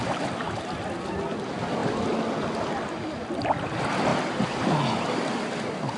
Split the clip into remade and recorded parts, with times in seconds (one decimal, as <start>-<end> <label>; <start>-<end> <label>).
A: 0.0-6.0 recorded